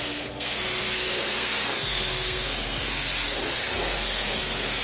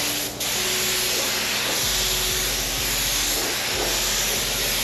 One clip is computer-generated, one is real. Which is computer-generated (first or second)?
first